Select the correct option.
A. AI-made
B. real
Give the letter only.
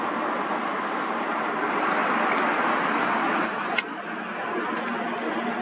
B